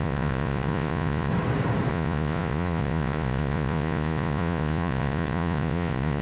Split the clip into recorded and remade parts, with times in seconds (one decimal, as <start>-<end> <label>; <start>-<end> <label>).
0.0-1.3 remade; 1.3-1.9 recorded; 1.9-6.2 remade